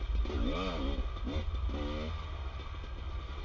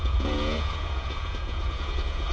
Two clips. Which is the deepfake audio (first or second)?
second